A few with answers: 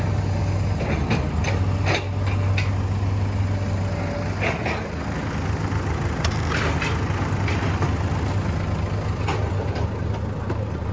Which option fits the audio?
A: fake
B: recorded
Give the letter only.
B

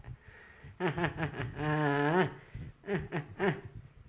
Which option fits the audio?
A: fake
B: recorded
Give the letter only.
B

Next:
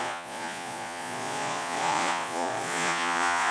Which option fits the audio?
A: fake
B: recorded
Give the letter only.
A